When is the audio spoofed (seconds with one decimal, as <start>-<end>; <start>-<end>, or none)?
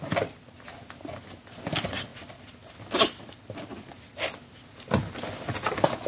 none